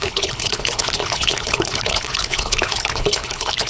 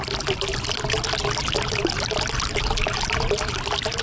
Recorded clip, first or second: second